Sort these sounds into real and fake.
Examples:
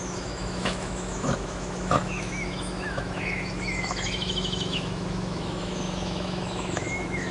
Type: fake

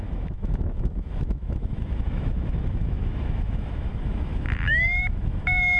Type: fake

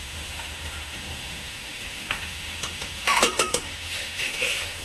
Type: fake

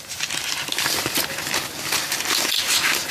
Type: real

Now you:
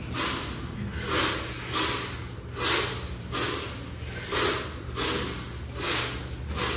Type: real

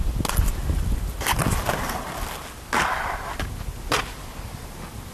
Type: real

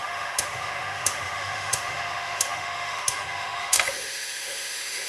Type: fake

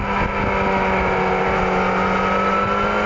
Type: real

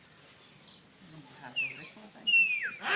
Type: real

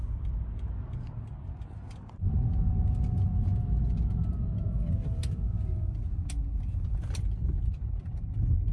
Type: real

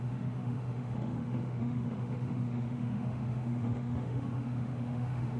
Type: fake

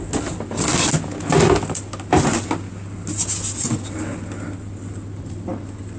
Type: real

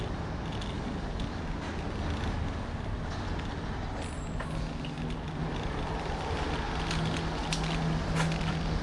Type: real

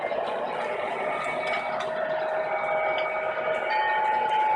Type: real